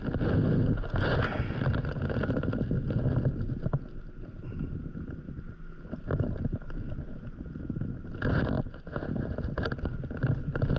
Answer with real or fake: real